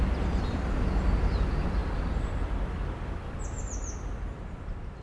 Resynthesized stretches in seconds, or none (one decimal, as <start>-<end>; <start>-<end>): none

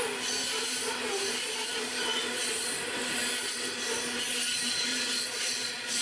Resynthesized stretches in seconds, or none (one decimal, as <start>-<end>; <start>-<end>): 4.9-6.0

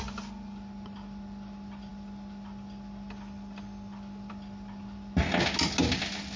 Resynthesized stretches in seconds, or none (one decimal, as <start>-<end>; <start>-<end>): none

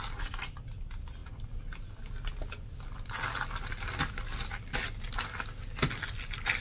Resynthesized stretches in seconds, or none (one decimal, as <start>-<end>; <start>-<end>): none